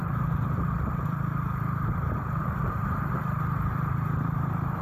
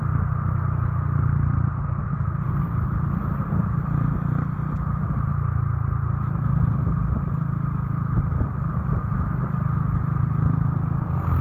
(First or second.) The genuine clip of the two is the second